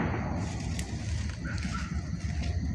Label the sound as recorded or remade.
recorded